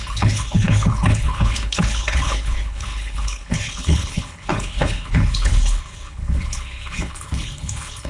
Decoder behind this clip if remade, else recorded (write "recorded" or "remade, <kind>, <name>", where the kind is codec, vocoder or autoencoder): remade, codec, HILCodec